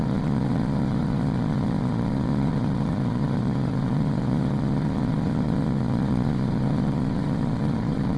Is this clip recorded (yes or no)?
no